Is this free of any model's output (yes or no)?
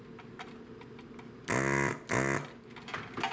yes